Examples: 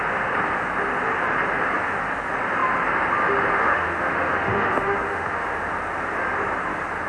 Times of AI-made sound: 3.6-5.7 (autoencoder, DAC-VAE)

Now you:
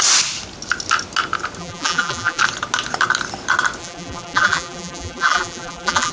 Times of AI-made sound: 1.6-2.4 (vocoder, BigVGAN v2); 3.8-6.1

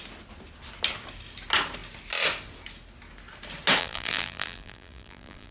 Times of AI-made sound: 3.8-5.5 (vocoder, BigVGAN v2)

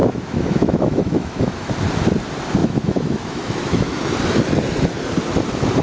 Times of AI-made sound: 0.0-1.7 (autoencoder, DAC-VAE); 2.6-4.1

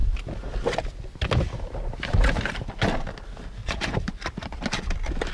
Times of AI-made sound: 3.6-4.3 (vocoder, BigVGAN v2)

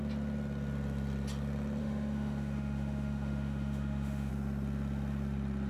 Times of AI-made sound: 1.8-4.3 (autoencoder, DAC-VAE)

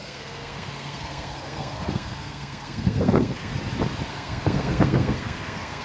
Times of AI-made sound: 0.0-3.5 (codec, SNAC); 4.1-5.8